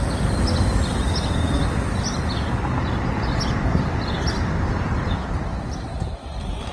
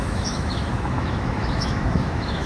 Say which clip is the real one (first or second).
first